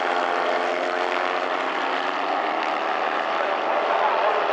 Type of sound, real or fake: real